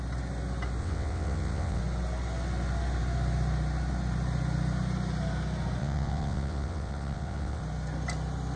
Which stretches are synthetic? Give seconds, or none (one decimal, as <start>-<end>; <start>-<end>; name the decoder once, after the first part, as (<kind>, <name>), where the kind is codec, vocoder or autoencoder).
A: 0.8-1.8 (vocoder, WaveNeXt); 5.8-7.6